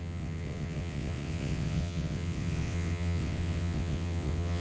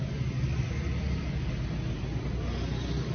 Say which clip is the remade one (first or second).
first